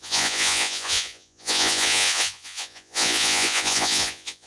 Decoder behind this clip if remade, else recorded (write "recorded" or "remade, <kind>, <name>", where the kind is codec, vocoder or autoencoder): remade, vocoder, Vocos